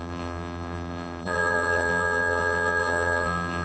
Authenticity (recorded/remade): remade